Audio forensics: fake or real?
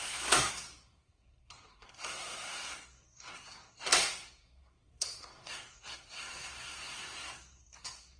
fake